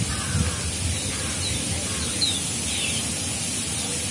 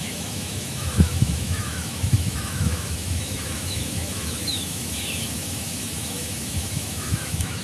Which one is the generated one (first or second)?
second